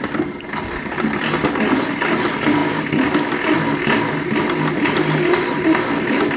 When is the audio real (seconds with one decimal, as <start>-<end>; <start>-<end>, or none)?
0.0-2.6; 3.6-6.4